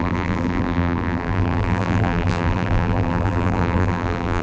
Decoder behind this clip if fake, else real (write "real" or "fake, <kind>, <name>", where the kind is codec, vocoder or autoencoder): fake, vocoder, BigVGAN v2